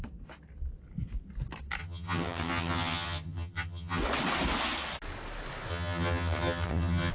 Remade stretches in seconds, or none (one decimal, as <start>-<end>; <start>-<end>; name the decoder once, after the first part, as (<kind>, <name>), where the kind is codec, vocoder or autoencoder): 1.8-4.0 (vocoder, HiFi-GAN); 5.7-7.1